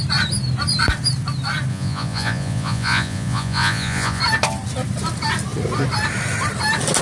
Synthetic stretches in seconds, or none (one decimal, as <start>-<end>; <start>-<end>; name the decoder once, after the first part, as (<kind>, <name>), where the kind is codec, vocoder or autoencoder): 1.7-4.2 (vocoder, Vocos)